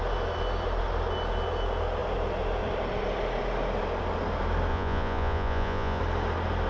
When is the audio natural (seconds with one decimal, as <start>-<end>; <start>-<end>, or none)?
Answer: 0.0-4.7; 6.0-6.7